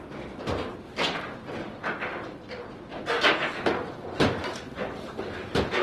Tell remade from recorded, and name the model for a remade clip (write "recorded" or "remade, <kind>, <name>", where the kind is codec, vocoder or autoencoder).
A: recorded